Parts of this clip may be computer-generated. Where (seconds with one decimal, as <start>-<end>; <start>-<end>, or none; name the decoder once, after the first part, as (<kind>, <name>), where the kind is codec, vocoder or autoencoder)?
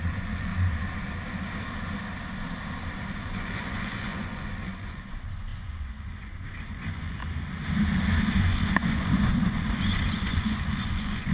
0.0-0.5 (vocoder, Vocos); 3.1-7.2; 8.4-11.3